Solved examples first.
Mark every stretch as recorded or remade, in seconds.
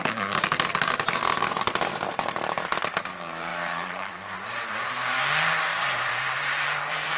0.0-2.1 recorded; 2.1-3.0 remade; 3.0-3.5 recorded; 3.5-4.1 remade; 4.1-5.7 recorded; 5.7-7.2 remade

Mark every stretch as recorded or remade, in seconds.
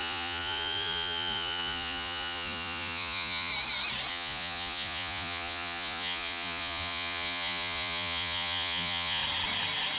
0.0-3.5 remade; 3.5-4.1 recorded; 4.1-9.2 remade; 9.2-10.0 recorded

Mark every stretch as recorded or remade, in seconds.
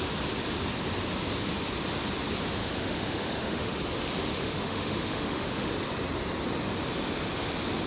0.0-2.6 recorded; 2.6-3.8 remade; 3.8-4.3 recorded; 4.3-5.7 remade; 5.7-7.9 recorded